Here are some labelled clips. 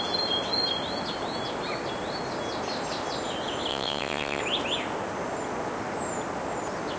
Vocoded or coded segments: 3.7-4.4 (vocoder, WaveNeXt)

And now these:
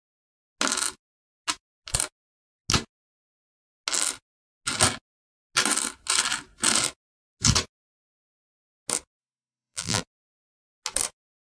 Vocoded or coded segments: 9.2-10.0 (vocoder, BigVGAN v2)

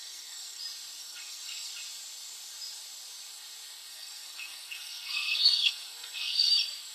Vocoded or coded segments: 0.0-0.6 (codec, SNAC); 1.0-1.7; 3.9-6.5

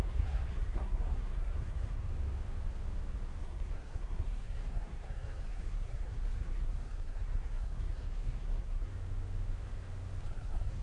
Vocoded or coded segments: 0.0-2.1 (codec, SNAC); 3.4-8.9; 10.2-10.8

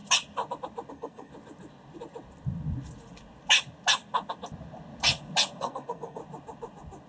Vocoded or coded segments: 0.9-1.3 (codec, SNAC); 5.6-6.2

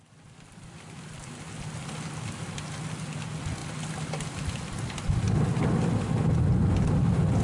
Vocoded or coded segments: none

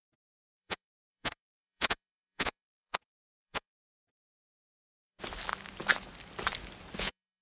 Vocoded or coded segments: 0.0-5.2 (vocoder, Vocos); 7.0-7.4

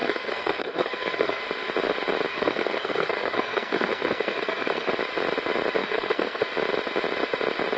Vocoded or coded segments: 0.0-1.4 (codec, SNAC); 2.3-4.9; 5.8-6.4